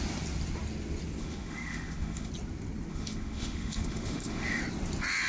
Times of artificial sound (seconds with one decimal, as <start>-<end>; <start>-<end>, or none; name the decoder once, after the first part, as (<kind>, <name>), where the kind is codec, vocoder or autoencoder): 1.2-2.3 (autoencoder, DAC-VAE); 2.9-4.6